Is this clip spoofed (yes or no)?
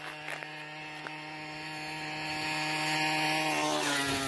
no